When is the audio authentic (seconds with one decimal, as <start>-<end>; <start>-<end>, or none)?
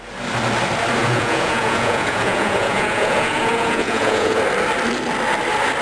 0.0-1.0; 4.4-5.8